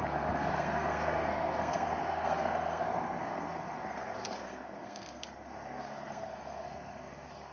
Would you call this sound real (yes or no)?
no